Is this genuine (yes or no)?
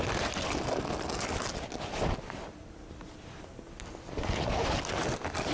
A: yes